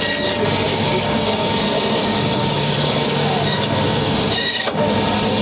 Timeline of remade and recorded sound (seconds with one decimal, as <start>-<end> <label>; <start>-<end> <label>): 0.0-0.7 recorded; 0.7-1.5 remade; 1.5-2.0 recorded; 2.0-4.8 remade; 4.8-5.4 recorded